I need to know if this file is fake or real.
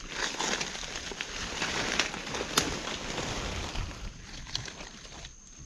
real